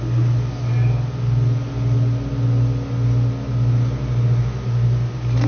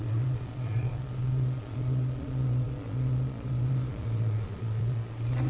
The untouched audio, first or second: first